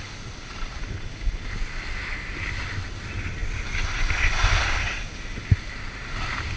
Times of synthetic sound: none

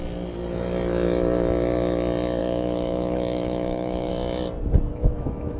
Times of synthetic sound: 2.4-4.1 (autoencoder, DAC-VAE); 4.9-5.6

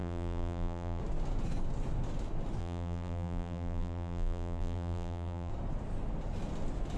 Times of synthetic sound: 0.0-1.0 (vocoder, BigVGAN v2); 2.6-5.5

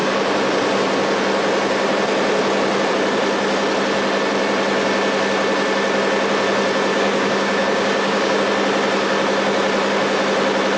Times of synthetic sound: 6.9-8.4 (codec, DAC)

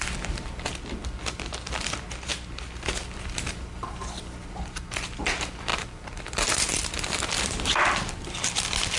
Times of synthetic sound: 0.0-2.3 (vocoder, BigVGAN v2); 4.2-9.0